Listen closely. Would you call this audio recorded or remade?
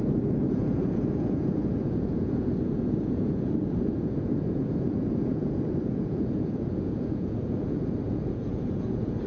remade